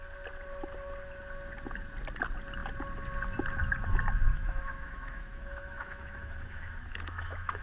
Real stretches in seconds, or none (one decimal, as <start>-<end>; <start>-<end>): 0.0-4.3